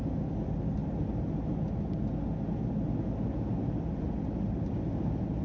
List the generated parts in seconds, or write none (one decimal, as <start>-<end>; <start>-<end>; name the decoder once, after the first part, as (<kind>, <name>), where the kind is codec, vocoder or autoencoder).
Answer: none